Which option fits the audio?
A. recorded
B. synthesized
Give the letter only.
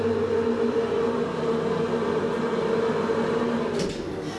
A